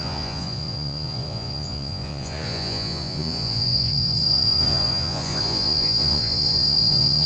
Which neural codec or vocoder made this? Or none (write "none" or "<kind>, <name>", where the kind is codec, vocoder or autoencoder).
vocoder, Vocos